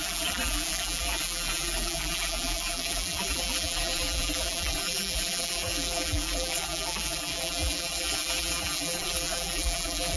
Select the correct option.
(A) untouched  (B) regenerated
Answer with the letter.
B